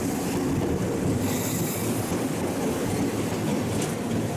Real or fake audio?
real